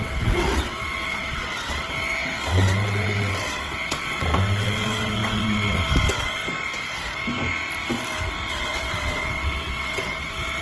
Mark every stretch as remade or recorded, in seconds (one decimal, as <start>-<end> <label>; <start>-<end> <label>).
0.0-6.4 remade; 6.4-8.5 recorded; 8.5-10.6 remade